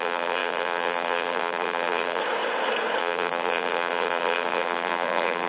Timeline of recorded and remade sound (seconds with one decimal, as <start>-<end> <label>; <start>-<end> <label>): 0.0-2.2 remade; 2.2-3.0 recorded; 3.0-5.5 remade